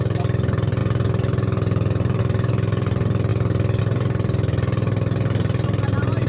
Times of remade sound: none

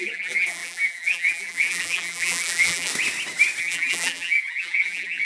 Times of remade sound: 0.0-2.9 (vocoder, BigVGAN v2); 3.6-5.2

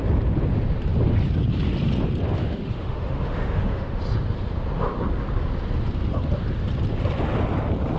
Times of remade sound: 2.4-4.0 (autoencoder, DAC-VAE)

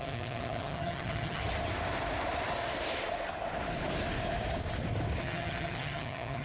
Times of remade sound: 0.0-1.4 (vocoder, HiFi-GAN); 5.2-6.4